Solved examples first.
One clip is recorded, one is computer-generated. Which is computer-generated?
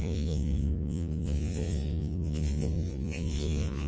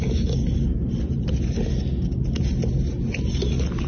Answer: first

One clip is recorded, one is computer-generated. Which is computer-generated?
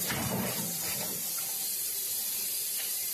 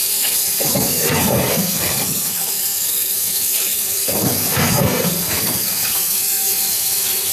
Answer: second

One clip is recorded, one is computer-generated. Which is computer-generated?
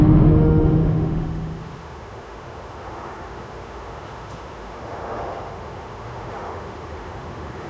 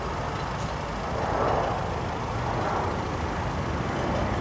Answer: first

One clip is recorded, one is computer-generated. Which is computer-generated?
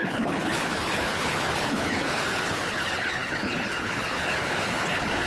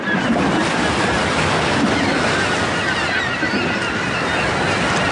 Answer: first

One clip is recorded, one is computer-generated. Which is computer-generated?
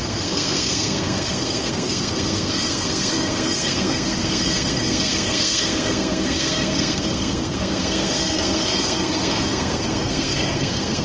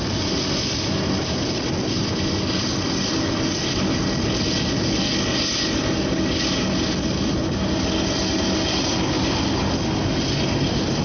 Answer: first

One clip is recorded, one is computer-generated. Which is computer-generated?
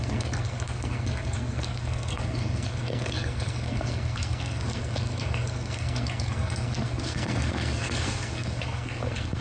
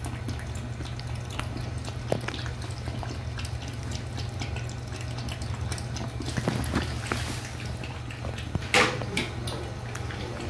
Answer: first